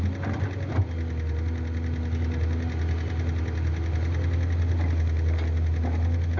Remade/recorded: recorded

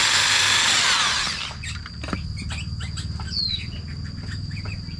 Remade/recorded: recorded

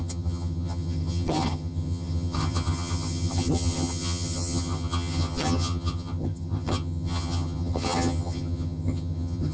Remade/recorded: remade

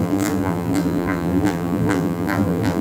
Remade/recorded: remade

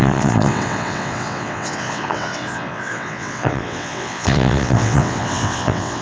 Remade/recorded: remade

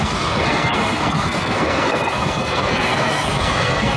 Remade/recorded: remade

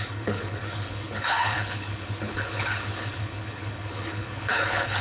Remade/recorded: remade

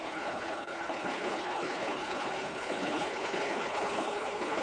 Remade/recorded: remade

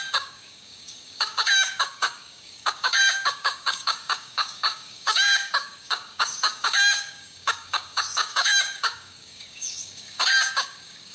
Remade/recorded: remade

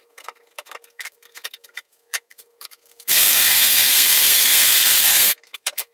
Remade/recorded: remade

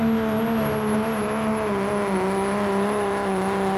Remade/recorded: recorded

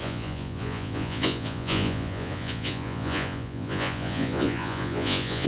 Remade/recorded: remade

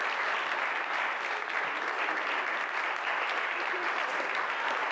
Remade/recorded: recorded